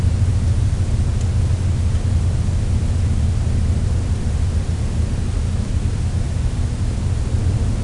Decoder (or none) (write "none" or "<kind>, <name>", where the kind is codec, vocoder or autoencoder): none